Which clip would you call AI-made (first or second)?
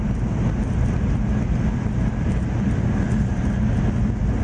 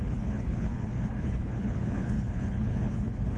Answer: second